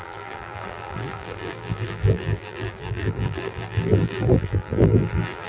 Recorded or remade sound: remade